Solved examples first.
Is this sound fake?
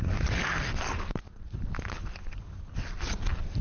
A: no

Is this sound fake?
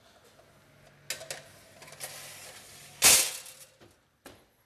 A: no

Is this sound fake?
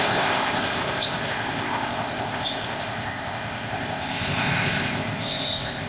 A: yes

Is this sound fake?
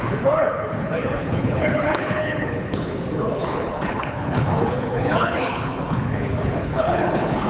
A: yes